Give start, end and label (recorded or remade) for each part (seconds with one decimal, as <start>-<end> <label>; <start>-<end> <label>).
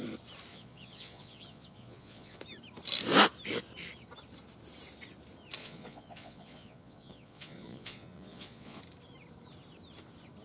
0.0-0.5 recorded; 0.5-2.4 remade; 2.4-5.6 recorded; 5.6-8.8 remade; 8.8-10.4 recorded